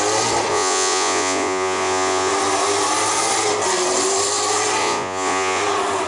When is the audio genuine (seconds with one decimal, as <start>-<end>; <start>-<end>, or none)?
0.0-0.5; 2.3-4.8; 5.6-6.1